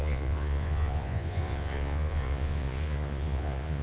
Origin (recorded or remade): remade